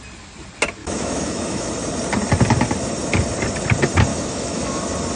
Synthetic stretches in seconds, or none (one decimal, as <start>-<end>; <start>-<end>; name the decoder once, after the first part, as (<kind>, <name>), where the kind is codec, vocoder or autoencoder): 0.8-1.7 (autoencoder, DAC-VAE); 4.1-4.8